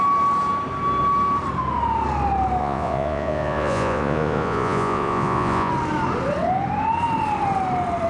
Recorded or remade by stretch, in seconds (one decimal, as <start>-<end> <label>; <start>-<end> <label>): 0.0-2.6 recorded; 2.6-5.7 remade; 5.7-8.1 recorded